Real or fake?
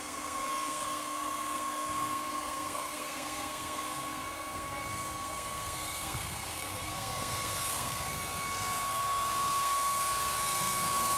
fake